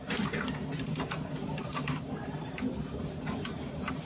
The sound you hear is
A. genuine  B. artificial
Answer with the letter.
B